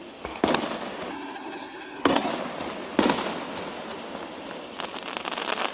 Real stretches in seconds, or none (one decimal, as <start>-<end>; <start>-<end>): 0.0-1.1; 2.3-5.7